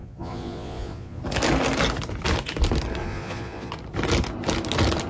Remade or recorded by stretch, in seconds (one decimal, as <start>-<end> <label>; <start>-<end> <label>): 0.0-1.2 remade; 1.2-3.0 recorded; 3.0-3.7 remade; 3.7-5.1 recorded